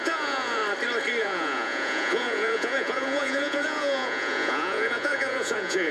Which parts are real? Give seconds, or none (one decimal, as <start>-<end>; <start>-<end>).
0.6-1.2